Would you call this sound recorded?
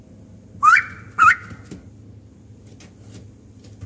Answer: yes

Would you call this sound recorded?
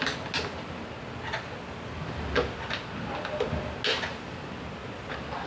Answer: yes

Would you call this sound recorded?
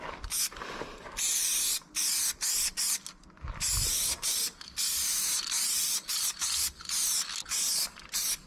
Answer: yes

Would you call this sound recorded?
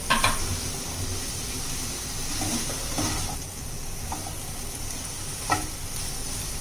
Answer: yes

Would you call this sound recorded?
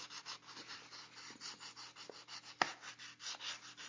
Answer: yes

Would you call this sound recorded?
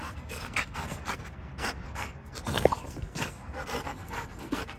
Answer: no